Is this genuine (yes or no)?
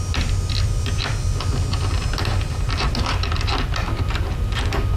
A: yes